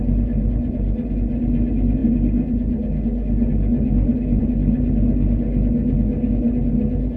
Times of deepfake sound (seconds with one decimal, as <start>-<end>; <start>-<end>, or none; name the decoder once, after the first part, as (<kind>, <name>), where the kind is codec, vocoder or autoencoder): none